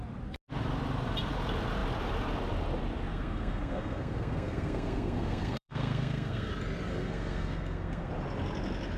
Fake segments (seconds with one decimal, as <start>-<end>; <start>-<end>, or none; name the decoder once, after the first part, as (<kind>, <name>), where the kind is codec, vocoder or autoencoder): 3.1-6.5 (codec, SNAC); 6.9-8.1